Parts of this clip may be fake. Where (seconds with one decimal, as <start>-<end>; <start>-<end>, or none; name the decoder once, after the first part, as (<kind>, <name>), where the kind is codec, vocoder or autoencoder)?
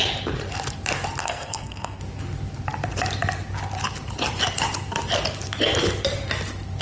1.2-2.0 (codec, SNAC)